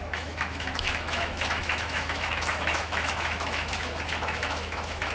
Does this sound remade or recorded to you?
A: remade